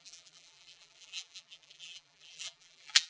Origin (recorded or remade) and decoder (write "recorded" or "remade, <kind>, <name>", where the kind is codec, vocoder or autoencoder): remade, vocoder, BigVGAN v2